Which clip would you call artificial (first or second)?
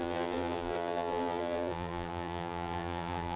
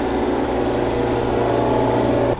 first